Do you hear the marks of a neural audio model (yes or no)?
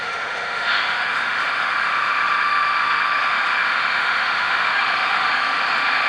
yes